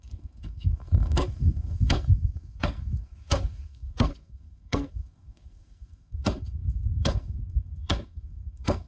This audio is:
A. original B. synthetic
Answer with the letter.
B